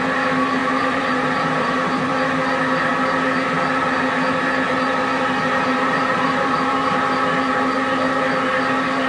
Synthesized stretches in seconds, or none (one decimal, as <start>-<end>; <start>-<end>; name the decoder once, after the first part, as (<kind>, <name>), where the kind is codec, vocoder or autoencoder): 0.6-2.1 (vocoder, BigVGAN v2); 5.7-6.9